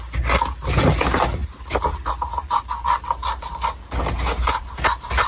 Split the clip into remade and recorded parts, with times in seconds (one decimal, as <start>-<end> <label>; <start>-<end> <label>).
0.0-5.3 recorded